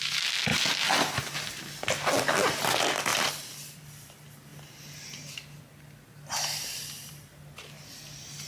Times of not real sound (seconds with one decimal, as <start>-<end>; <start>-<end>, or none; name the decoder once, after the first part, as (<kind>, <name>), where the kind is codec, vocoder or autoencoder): none